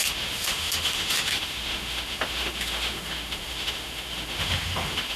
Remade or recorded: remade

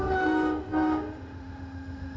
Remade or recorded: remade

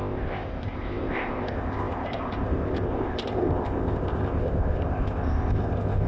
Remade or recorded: remade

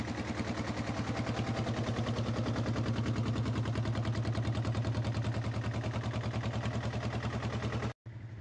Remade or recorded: recorded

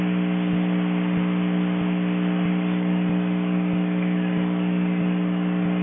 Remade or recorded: recorded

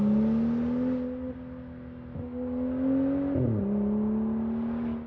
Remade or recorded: recorded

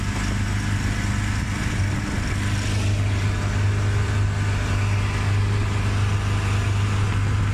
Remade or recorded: recorded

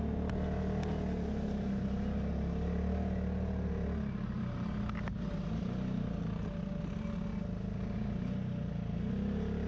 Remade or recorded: recorded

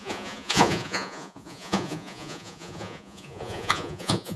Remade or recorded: remade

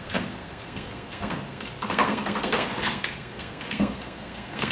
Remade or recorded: remade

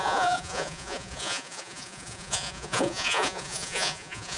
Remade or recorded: remade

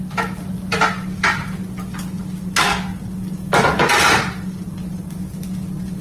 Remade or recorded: recorded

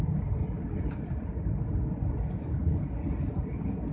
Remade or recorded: recorded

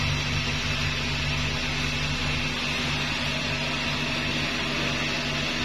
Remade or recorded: recorded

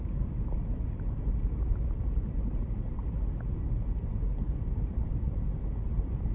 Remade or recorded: recorded